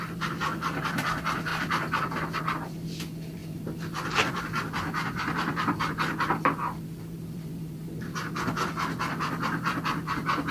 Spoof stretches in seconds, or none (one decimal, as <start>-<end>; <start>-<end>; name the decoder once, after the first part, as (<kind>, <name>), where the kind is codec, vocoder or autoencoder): none